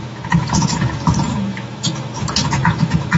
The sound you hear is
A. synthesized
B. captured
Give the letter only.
A